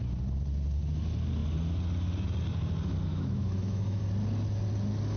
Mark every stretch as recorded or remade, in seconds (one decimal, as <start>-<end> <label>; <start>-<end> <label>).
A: 0.0-3.1 recorded; 3.1-4.0 remade; 4.0-5.2 recorded